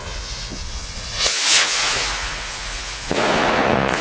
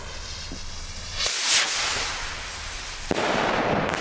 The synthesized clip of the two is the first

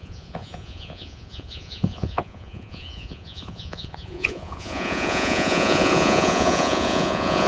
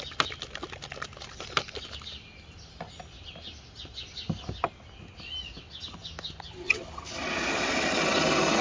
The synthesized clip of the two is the first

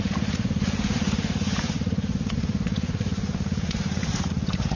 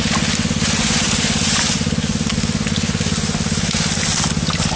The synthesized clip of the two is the first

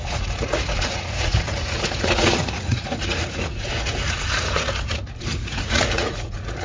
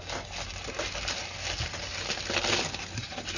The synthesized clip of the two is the first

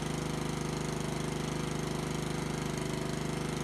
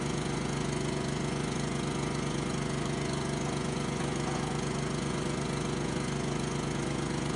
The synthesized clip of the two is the second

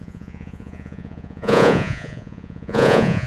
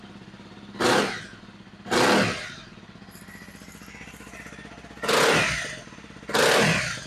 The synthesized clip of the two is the first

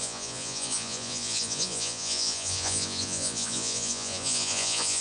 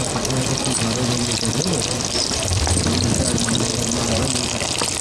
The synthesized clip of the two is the first